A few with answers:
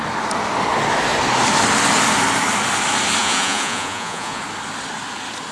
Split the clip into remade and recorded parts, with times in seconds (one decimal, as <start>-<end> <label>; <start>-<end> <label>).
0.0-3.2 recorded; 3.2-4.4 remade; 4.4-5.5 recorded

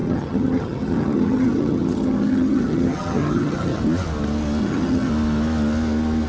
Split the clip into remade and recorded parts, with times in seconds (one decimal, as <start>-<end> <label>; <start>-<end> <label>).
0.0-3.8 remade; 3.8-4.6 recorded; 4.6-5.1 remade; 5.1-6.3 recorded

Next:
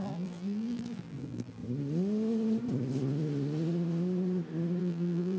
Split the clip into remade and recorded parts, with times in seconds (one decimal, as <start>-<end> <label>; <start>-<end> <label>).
0.0-1.6 remade; 1.6-4.8 recorded; 4.8-5.4 remade